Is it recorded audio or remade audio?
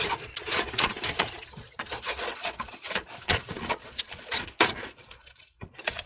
remade